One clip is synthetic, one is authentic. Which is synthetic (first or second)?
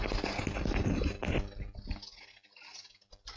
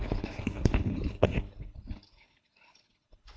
second